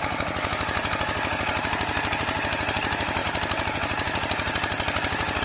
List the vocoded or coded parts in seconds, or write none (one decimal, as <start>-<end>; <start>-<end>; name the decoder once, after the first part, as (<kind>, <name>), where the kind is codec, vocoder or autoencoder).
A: none